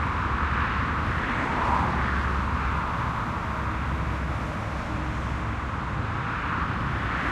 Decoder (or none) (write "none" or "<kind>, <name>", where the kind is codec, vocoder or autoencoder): none